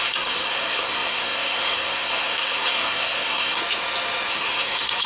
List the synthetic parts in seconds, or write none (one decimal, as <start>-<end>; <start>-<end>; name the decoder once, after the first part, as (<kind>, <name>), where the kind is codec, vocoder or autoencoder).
0.0-3.6 (codec, SNAC); 4.3-5.1